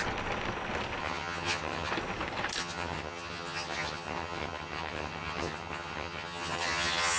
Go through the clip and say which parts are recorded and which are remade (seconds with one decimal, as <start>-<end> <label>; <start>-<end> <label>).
0.0-1.0 recorded; 1.0-1.9 remade; 1.9-2.6 recorded; 2.6-7.2 remade